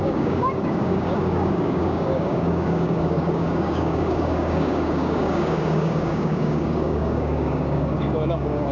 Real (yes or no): no